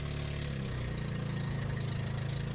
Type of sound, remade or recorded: recorded